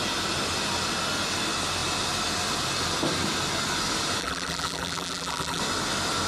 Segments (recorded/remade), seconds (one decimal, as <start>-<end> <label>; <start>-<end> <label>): 0.0-4.2 recorded; 4.2-5.6 remade; 5.6-6.3 recorded